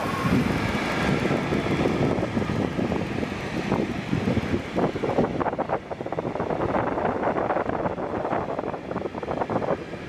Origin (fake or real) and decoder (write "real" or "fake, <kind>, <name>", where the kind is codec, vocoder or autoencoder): real